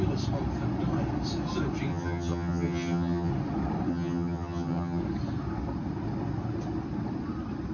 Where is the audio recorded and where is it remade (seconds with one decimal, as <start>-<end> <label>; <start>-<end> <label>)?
0.0-1.9 recorded; 1.9-3.3 remade; 3.3-3.9 recorded; 3.9-5.0 remade; 5.0-7.7 recorded

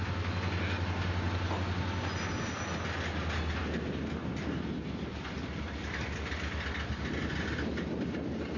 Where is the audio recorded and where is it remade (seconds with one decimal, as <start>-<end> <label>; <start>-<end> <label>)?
0.0-8.6 recorded

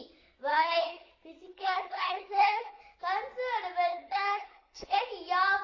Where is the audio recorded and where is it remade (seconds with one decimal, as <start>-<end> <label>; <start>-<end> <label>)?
0.0-0.5 recorded; 0.5-1.1 remade; 1.1-1.5 recorded; 1.5-2.8 remade; 2.8-3.9 recorded; 3.9-5.1 remade; 5.1-5.6 recorded

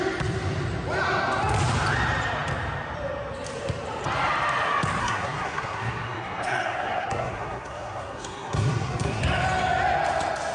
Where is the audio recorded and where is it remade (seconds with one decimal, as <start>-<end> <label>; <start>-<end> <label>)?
0.0-5.0 recorded; 5.0-9.2 remade; 9.2-10.5 recorded